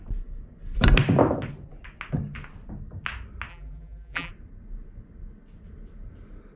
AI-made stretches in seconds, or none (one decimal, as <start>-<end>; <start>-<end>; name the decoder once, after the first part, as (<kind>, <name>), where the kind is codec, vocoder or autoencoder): 3.5-4.3 (vocoder, BigVGAN v2)